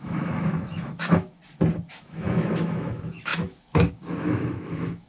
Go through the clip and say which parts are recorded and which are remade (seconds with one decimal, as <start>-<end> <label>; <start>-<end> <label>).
0.0-1.4 remade; 1.4-1.9 recorded; 1.9-5.1 remade